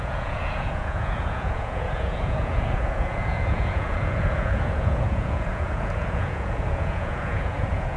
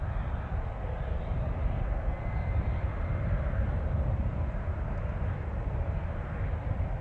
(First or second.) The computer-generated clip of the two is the first